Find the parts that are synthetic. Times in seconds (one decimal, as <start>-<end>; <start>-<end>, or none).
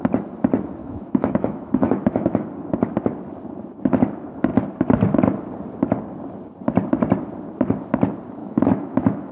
0.8-2.5; 8.4-9.3